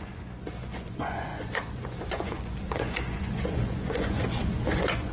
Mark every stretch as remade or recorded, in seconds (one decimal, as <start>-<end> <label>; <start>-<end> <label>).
0.0-5.1 remade